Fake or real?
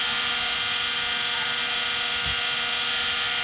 real